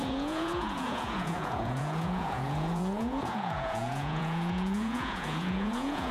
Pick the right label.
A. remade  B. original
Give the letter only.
A